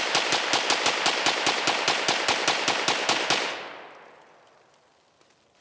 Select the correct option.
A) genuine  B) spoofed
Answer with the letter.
A